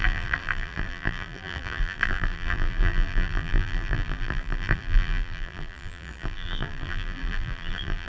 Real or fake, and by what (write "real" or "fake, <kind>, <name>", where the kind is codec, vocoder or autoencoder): fake, vocoder, BigVGAN v2